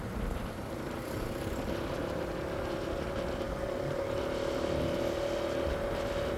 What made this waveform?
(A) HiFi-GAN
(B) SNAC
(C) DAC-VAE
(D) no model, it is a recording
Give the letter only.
D